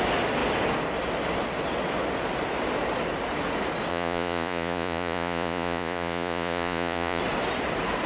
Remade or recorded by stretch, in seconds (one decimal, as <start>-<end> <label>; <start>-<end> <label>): 0.0-3.9 recorded; 3.9-7.2 remade; 7.2-8.1 recorded